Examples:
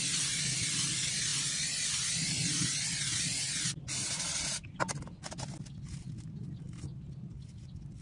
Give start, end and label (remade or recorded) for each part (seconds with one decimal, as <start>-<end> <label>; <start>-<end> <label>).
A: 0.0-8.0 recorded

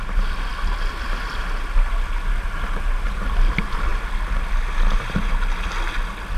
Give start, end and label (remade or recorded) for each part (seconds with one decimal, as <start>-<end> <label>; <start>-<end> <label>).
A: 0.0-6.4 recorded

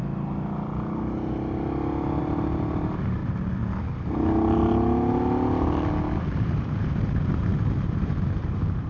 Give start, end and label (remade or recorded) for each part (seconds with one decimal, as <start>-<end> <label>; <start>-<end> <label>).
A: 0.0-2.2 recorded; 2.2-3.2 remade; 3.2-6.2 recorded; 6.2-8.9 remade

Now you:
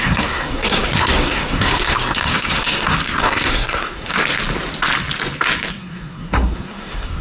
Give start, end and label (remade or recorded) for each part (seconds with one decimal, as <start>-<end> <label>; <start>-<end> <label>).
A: 0.0-4.2 remade; 4.2-5.7 recorded; 5.7-7.2 remade